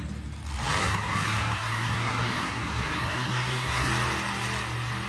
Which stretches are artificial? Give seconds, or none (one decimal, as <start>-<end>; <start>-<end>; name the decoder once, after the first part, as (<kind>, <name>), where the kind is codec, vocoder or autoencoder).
0.8-3.9 (codec, SNAC)